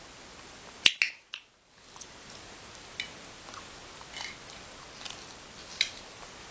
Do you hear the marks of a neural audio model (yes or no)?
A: no